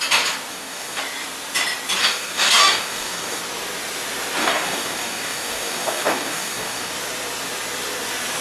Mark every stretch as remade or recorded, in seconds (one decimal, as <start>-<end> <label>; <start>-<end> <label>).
0.0-0.5 recorded; 0.5-1.0 remade; 1.0-2.0 recorded; 2.0-3.4 remade; 3.4-4.4 recorded; 4.4-6.9 remade; 6.9-8.4 recorded